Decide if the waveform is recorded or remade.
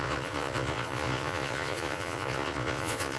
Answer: remade